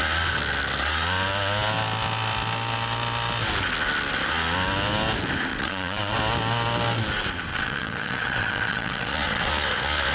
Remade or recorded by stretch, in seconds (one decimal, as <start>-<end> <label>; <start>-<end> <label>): 0.0-5.5 recorded; 5.5-6.2 remade; 6.2-7.5 recorded; 7.5-9.5 remade; 9.5-10.1 recorded